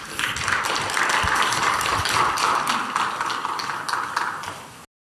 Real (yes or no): yes